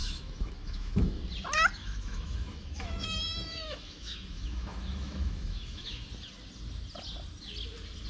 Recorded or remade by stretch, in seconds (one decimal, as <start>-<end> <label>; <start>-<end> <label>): 0.0-1.2 remade; 1.2-1.8 recorded; 1.8-6.1 remade; 6.1-8.1 recorded